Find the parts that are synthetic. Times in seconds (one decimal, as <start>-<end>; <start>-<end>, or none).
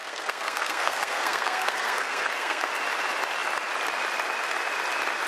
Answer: 0.0-2.7